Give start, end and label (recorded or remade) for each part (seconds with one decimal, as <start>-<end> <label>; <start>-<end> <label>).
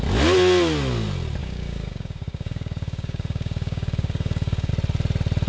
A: 0.0-1.4 recorded; 1.4-4.7 remade; 4.7-5.5 recorded